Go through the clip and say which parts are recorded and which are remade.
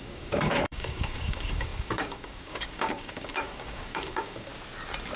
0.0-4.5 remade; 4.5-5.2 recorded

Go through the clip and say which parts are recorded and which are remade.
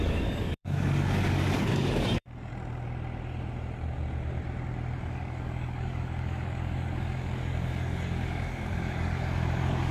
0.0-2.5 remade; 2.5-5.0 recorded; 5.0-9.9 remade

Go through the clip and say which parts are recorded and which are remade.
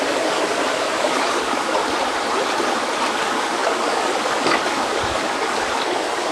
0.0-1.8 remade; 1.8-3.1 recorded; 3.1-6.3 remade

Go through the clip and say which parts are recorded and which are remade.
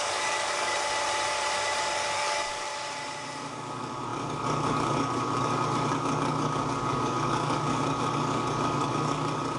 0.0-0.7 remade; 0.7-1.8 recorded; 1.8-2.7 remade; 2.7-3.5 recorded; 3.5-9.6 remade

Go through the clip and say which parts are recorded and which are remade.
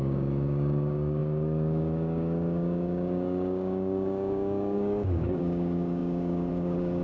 0.0-7.0 remade